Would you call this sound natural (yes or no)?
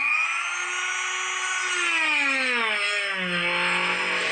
yes